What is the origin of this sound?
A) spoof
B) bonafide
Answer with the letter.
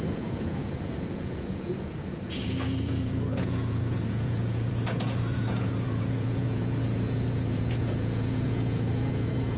A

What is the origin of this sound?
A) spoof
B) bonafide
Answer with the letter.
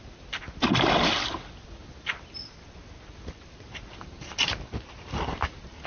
B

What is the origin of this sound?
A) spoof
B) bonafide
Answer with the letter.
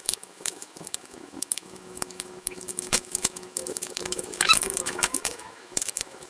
A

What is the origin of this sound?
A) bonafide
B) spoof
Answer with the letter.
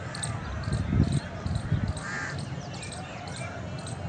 A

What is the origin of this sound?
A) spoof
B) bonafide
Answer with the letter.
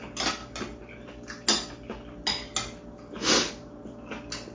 B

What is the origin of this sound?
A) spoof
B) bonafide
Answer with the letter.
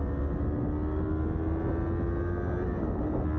B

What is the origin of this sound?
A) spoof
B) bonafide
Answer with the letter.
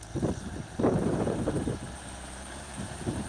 A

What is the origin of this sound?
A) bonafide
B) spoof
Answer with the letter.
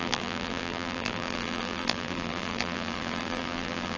B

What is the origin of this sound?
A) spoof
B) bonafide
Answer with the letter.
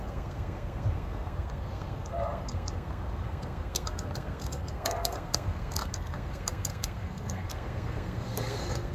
A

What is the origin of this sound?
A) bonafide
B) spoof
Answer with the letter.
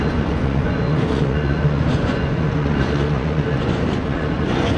B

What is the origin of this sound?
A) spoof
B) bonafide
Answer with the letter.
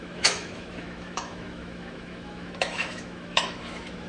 A